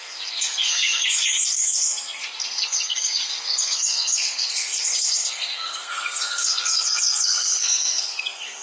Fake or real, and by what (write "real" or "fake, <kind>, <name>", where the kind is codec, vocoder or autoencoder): fake, codec, SNAC